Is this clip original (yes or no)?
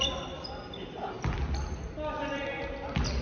yes